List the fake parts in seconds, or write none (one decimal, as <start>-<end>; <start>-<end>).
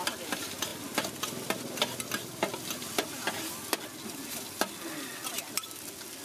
none